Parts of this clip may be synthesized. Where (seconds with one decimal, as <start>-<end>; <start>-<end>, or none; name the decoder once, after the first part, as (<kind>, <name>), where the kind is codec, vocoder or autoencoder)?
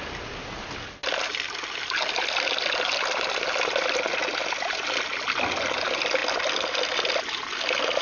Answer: none